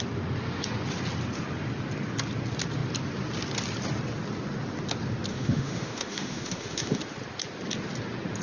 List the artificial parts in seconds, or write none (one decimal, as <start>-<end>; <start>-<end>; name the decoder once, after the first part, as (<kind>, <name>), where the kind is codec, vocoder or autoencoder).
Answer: 5.3-7.0 (autoencoder, DAC-VAE)